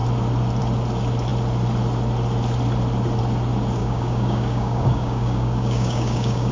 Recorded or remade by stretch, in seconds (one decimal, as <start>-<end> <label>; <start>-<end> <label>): 0.0-3.8 recorded; 3.8-6.5 remade